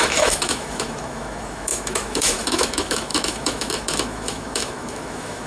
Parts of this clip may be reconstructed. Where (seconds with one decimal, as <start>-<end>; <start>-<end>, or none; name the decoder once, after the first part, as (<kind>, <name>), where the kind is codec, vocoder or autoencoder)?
0.0-5.5 (autoencoder, DAC-VAE)